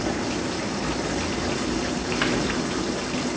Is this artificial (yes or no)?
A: no